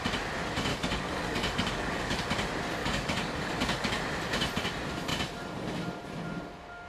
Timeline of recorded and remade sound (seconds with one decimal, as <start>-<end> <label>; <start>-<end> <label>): 0.0-0.7 recorded; 0.7-2.2 remade; 2.2-2.8 recorded; 2.8-4.0 remade; 4.0-6.9 recorded